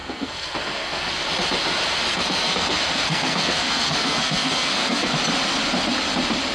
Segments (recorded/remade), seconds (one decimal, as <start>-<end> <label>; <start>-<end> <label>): 0.0-1.1 remade; 1.1-2.1 recorded; 2.1-5.1 remade; 5.1-6.5 recorded